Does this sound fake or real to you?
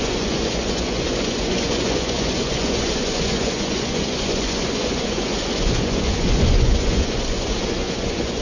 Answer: fake